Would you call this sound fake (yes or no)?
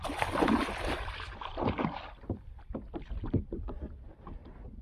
yes